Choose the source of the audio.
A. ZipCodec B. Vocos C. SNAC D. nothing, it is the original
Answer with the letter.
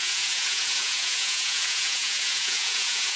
B